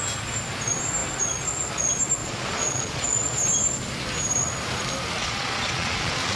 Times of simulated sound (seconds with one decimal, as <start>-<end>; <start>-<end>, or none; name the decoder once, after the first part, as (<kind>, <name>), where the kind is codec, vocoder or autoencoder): 2.2-3.4 (vocoder, Vocos); 5.2-6.4